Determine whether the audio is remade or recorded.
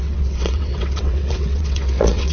remade